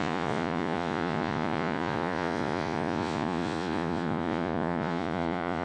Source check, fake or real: fake